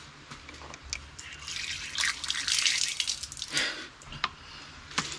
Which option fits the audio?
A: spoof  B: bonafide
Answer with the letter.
B